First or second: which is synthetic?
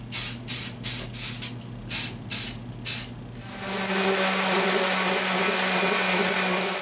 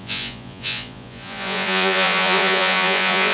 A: second